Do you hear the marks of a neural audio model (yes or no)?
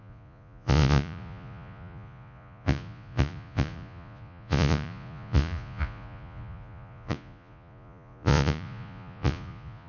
yes